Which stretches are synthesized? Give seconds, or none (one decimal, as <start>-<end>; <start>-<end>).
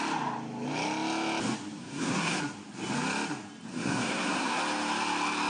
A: 1.8-2.4; 3.7-4.6